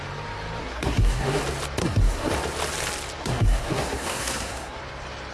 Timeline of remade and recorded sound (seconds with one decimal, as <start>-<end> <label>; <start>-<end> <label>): 0.0-0.6 recorded; 0.6-1.4 remade; 1.4-1.8 recorded; 1.8-2.3 remade; 2.3-3.2 recorded; 3.2-4.8 remade; 4.8-5.3 recorded